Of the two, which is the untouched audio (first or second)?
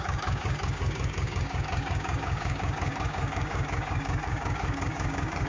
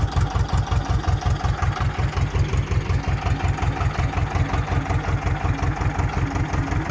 second